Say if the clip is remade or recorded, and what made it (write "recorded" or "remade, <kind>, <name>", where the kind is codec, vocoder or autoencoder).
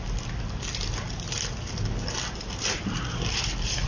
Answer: recorded